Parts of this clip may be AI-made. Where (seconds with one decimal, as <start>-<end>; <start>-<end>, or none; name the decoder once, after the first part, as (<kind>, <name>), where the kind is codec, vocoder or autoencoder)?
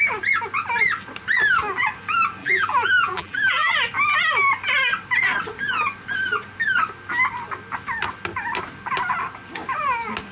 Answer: 2.4-3.7 (vocoder, BigVGAN v2)